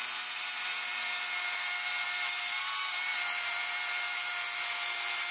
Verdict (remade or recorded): recorded